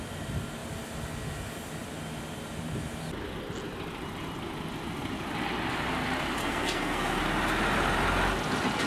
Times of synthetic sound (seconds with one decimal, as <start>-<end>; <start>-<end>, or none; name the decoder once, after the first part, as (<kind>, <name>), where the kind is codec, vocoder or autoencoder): 6.4-7.2 (codec, SNAC)